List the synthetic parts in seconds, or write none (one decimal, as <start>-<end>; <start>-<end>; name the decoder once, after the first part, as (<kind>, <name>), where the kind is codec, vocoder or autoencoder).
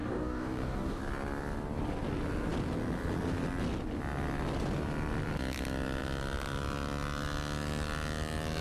0.0-1.0 (codec, DAC)